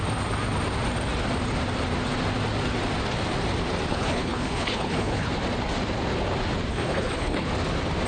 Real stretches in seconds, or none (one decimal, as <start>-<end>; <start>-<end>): 0.0-3.9; 5.3-6.7; 7.5-8.1